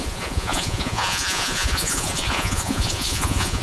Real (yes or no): no